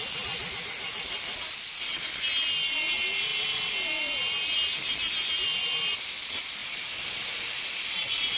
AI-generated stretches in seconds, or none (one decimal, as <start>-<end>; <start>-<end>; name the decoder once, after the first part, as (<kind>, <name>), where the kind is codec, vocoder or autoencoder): none

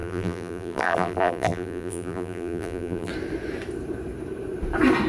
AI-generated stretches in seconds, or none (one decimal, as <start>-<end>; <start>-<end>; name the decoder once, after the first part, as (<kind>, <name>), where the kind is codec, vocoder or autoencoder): 0.0-3.1 (vocoder, BigVGAN v2)

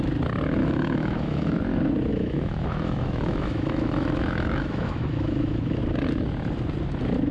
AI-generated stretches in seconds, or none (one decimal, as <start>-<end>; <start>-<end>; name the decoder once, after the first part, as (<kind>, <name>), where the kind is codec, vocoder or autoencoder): 0.6-1.6 (autoencoder, DAC-VAE); 2.1-5.8

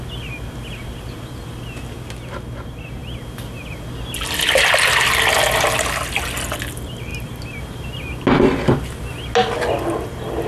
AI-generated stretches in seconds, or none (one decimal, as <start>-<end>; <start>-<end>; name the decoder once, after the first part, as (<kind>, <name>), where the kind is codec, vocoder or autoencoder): none

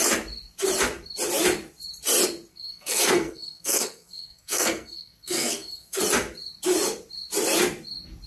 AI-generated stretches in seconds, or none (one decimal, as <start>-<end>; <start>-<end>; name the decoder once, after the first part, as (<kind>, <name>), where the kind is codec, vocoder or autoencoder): 2.5-6.0 (codec, SNAC)